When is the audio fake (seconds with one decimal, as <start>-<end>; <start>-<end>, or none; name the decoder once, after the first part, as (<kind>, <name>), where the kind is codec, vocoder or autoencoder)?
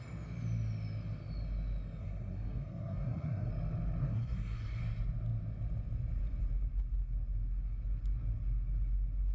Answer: 2.0-3.5 (codec, SNAC); 4.0-4.8